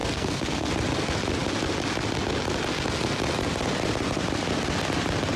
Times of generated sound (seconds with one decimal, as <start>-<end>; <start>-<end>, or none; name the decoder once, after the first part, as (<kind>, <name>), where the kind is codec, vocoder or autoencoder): 0.0-0.7 (codec, SNAC)